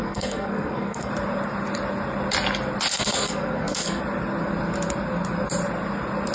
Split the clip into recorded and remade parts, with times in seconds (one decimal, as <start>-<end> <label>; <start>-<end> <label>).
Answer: 0.0-1.1 remade; 1.1-2.9 recorded; 2.9-4.0 remade; 4.0-6.3 recorded